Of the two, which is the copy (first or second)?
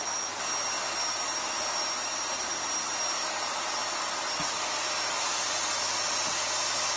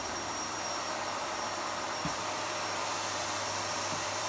second